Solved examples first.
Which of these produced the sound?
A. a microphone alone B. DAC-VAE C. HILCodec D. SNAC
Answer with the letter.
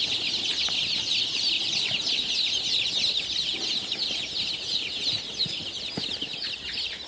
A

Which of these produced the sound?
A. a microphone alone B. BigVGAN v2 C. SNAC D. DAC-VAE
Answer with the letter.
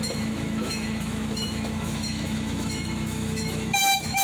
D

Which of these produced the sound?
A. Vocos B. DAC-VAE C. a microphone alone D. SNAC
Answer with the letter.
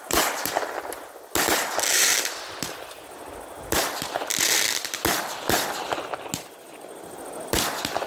C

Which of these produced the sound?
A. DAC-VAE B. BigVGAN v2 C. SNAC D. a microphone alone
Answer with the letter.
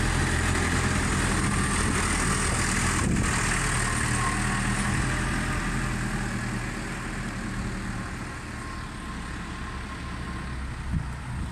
D